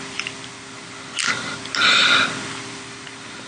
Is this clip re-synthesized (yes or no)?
no